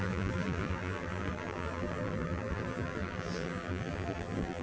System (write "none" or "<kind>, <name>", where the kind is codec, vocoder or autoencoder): vocoder, BigVGAN v2